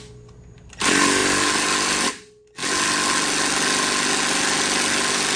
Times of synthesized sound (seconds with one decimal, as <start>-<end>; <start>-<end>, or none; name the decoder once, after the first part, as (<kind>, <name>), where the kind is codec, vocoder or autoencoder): 1.2-2.1 (vocoder, BigVGAN v2)